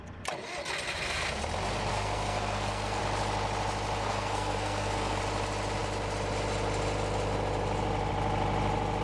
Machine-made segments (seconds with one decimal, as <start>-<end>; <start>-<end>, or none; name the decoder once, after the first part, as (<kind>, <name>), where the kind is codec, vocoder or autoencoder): 1.9-3.0 (codec, SNAC); 4.0-5.2